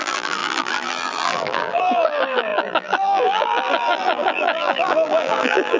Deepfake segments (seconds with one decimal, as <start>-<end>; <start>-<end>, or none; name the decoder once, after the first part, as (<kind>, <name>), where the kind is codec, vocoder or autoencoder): 0.0-5.8 (vocoder, BigVGAN v2)